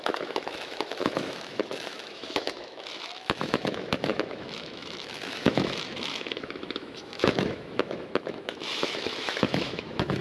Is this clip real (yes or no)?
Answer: no